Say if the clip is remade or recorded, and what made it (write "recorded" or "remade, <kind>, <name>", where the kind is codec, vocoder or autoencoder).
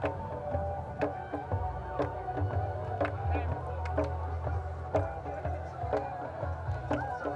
recorded